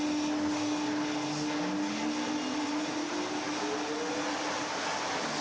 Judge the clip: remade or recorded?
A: recorded